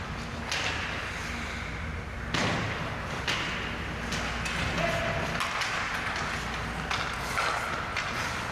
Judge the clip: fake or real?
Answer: real